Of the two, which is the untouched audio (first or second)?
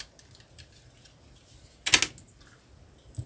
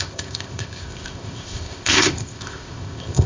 first